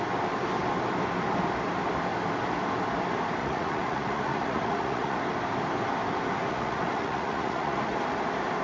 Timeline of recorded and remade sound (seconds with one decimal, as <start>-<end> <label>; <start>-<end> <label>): 0.0-3.4 recorded; 3.4-5.2 remade; 5.2-6.5 recorded; 6.5-7.9 remade; 7.9-8.6 recorded